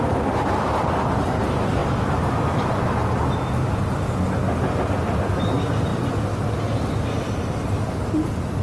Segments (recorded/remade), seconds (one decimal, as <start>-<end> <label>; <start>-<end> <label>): 0.0-8.6 recorded